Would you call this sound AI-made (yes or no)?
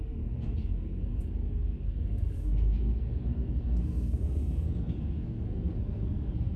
yes